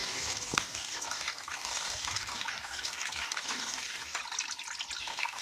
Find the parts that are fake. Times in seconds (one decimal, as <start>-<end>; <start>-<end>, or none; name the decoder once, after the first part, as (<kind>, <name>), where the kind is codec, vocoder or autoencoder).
0.0-4.2 (codec, DAC); 5.0-5.4